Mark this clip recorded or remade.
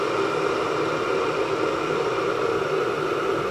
recorded